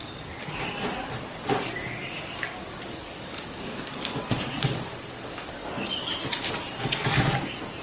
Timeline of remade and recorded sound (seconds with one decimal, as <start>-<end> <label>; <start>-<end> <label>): 0.0-0.5 remade; 0.5-1.4 recorded; 1.4-6.1 remade; 6.1-7.8 recorded